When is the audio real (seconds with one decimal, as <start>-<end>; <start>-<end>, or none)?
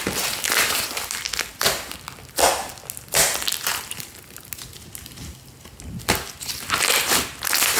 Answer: 0.0-7.8